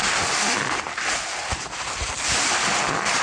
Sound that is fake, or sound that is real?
real